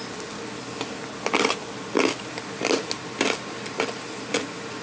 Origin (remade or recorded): recorded